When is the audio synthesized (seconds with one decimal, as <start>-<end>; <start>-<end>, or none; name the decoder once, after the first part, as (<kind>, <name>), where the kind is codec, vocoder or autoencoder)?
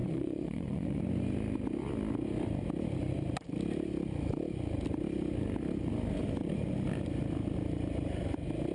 0.0-1.0 (vocoder, Vocos)